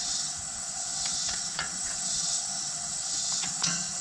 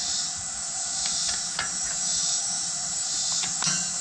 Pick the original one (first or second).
second